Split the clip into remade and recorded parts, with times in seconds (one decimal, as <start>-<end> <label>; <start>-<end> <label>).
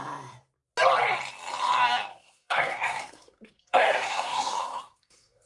0.0-2.1 recorded; 2.1-5.5 remade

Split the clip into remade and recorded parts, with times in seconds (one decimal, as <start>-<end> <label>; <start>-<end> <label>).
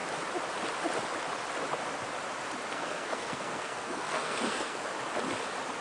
0.0-2.7 recorded; 2.7-4.9 remade; 4.9-5.8 recorded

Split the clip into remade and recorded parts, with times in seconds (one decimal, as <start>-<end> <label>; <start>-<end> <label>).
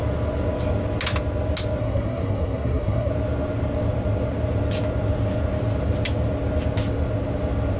0.0-1.8 recorded; 1.8-3.1 remade; 3.1-7.8 recorded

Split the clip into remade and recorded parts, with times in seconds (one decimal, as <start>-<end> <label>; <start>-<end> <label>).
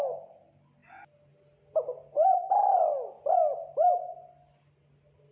0.0-5.3 recorded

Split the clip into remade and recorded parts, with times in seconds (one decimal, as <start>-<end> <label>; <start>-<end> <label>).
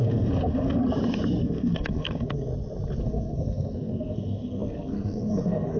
0.0-0.8 remade; 0.8-1.4 recorded; 1.4-2.5 remade; 2.5-3.0 recorded; 3.0-5.8 remade